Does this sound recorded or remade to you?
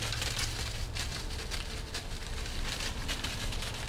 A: recorded